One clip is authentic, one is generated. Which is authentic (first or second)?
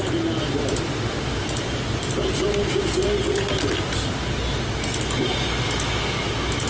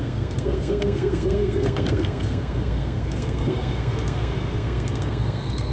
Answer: first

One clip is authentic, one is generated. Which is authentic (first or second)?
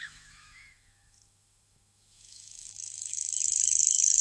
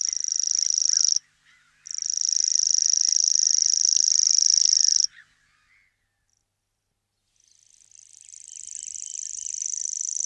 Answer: second